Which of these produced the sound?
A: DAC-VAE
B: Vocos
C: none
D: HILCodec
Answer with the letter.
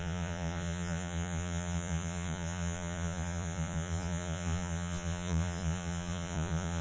B